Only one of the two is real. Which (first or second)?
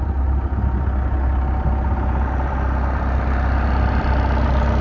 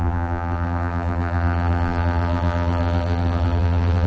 first